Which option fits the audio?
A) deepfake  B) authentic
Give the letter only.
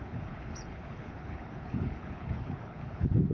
A